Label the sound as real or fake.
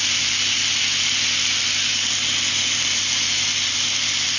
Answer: real